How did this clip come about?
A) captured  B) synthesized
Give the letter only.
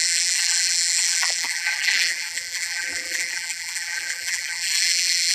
B